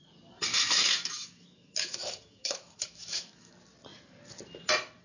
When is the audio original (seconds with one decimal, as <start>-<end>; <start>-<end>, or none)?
0.0-0.5; 3.5-5.0